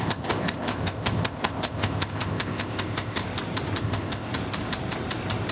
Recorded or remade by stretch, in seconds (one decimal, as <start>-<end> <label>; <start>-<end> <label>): 0.0-3.2 remade; 3.2-3.8 recorded; 3.8-4.3 remade; 4.3-5.5 recorded